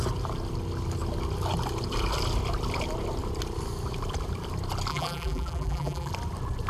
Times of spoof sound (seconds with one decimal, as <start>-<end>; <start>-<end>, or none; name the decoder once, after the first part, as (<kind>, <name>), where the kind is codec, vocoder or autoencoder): 4.9-6.1 (vocoder, BigVGAN v2)